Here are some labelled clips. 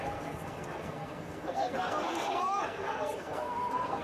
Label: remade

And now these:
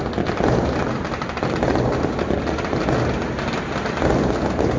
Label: recorded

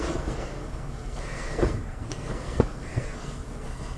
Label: remade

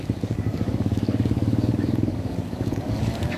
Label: remade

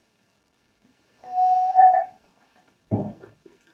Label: remade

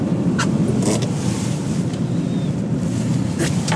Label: recorded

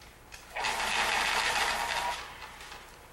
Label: recorded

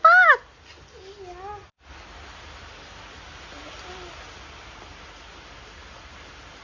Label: recorded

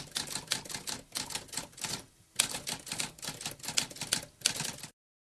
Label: recorded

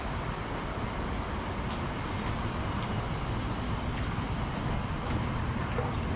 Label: recorded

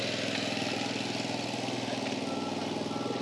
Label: recorded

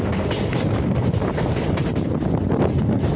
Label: recorded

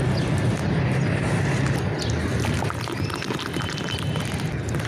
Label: recorded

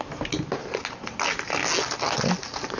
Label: recorded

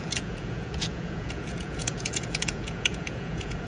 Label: remade